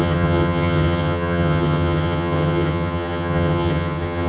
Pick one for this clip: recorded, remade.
remade